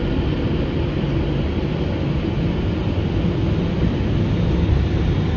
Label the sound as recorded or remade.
recorded